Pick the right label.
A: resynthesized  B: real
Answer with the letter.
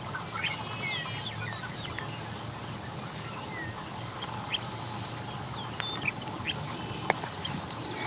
B